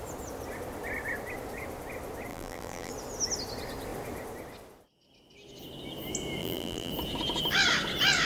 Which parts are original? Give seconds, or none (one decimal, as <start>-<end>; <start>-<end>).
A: 0.0-2.3; 2.9-6.4; 6.9-8.2